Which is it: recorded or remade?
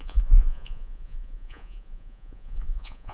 remade